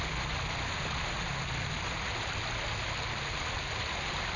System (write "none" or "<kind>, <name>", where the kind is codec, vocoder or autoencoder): none